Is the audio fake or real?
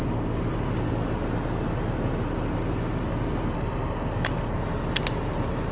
real